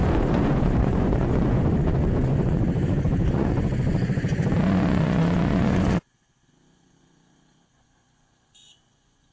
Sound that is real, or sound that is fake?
fake